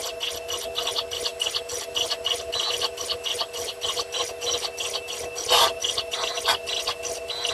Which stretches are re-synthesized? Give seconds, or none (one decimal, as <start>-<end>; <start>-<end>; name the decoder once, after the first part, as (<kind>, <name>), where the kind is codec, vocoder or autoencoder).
none